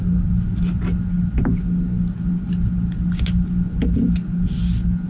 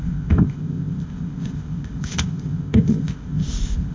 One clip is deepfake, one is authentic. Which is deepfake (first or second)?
second